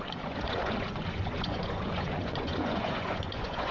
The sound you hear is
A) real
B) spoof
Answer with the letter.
B